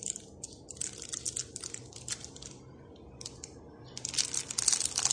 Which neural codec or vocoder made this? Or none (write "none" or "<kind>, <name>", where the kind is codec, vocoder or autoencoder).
none